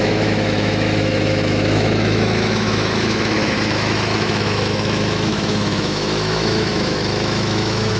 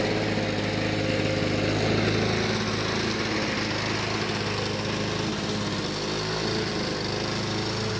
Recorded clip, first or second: second